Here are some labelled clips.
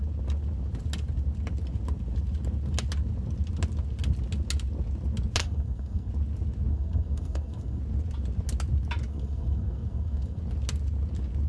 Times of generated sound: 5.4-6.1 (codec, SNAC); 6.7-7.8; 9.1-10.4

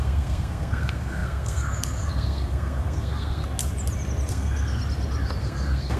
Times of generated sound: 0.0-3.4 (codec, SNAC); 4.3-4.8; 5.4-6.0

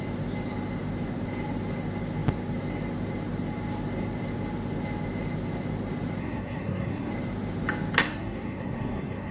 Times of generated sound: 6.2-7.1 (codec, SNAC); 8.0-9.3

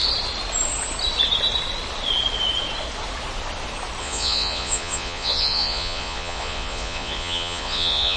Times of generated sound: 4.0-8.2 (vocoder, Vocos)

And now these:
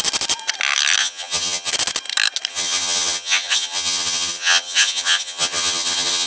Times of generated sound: 1.0-1.7 (vocoder, HiFi-GAN); 2.5-6.3